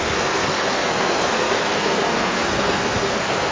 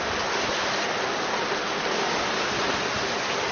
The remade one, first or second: first